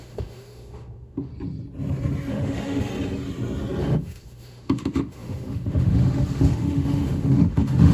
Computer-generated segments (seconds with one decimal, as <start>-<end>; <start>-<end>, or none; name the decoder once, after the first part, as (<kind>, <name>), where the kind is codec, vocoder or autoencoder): 0.0-1.3 (autoencoder, DAC-VAE); 2.3-2.9; 3.8-7.9